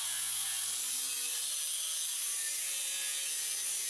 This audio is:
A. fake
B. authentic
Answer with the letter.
B